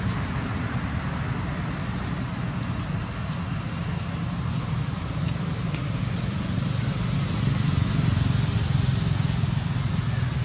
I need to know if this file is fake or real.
real